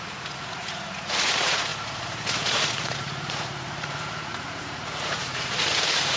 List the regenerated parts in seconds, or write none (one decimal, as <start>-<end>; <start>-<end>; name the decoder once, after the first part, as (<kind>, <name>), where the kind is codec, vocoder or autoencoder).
0.0-6.2 (vocoder, Vocos)